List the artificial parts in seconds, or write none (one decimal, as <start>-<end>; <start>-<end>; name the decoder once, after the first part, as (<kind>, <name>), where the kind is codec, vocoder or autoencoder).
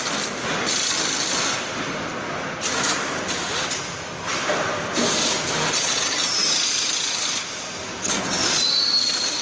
none